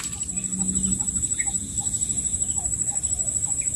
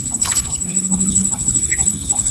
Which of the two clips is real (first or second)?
first